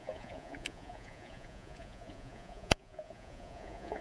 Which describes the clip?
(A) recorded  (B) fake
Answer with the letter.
B